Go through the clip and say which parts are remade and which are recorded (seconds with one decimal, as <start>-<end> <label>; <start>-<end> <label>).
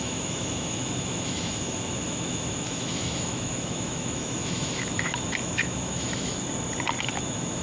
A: 0.0-6.3 remade; 6.3-7.0 recorded; 7.0-7.6 remade